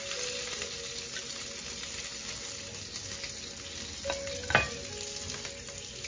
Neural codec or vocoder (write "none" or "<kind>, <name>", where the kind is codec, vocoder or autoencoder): none